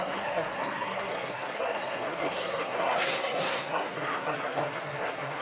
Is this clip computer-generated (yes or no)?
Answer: yes